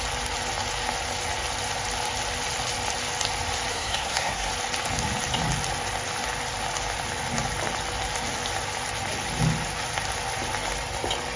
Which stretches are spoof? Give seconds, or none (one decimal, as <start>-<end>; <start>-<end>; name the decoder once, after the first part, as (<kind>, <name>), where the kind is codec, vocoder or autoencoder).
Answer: 3.7-4.5 (codec, SNAC)